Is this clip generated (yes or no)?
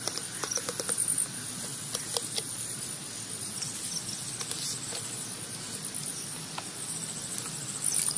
no